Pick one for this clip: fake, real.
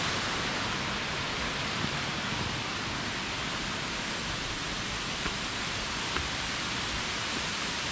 real